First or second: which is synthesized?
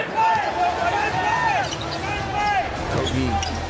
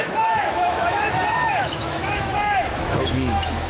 second